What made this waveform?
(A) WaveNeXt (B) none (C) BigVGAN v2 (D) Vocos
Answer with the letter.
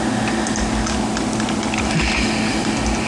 C